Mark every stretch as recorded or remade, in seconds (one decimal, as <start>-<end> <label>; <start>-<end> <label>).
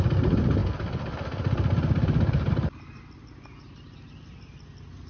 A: 0.0-5.1 recorded